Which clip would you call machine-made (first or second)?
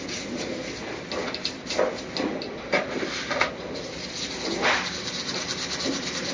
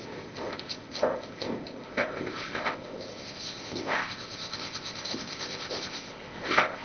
second